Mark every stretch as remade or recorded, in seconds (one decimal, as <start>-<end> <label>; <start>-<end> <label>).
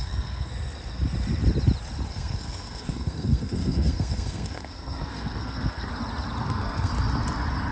0.0-0.5 remade; 0.5-2.1 recorded; 2.1-5.9 remade; 5.9-6.4 recorded; 6.4-6.9 remade; 6.9-7.7 recorded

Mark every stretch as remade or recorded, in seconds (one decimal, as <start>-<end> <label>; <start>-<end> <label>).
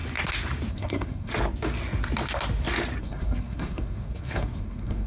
0.0-0.7 recorded; 0.7-1.3 remade; 1.3-3.0 recorded; 3.0-5.1 remade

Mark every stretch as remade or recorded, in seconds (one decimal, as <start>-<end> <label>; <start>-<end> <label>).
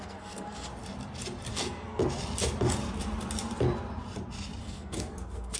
0.0-0.7 remade; 0.7-1.5 recorded; 1.5-2.0 remade; 2.0-4.6 recorded; 4.6-5.6 remade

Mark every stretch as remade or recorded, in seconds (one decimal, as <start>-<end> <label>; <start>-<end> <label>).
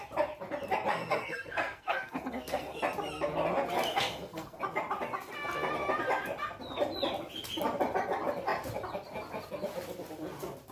0.0-0.9 recorded; 0.9-2.8 remade; 2.8-3.9 recorded; 3.9-4.6 remade; 4.6-10.7 recorded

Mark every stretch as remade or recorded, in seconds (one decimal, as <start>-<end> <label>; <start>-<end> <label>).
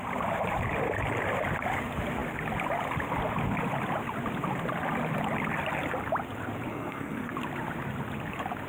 0.0-6.7 recorded; 6.7-7.3 remade; 7.3-8.7 recorded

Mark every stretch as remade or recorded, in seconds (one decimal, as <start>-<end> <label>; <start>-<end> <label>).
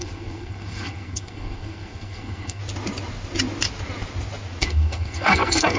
0.0-2.6 remade; 2.6-4.6 recorded; 4.6-5.8 remade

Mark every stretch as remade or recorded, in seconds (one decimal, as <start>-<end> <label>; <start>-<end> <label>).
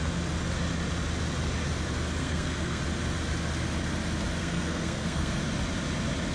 0.0-2.2 recorded; 2.2-2.8 remade; 2.8-4.4 recorded; 4.4-5.4 remade; 5.4-6.3 recorded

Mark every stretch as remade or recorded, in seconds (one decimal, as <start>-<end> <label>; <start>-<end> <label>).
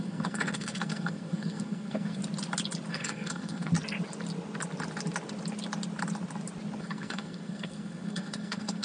0.0-2.2 remade; 2.2-2.9 recorded; 2.9-3.7 remade; 3.7-6.8 recorded; 6.8-8.8 remade